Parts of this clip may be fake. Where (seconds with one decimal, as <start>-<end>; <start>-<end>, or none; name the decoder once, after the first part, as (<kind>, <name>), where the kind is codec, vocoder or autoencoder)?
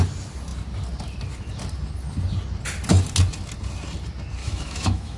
4.4-5.2 (autoencoder, DAC-VAE)